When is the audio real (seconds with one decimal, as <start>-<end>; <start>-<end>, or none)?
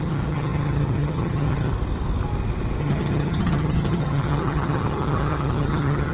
1.7-2.8